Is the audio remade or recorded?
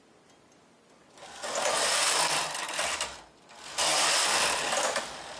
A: recorded